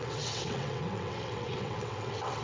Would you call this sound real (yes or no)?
no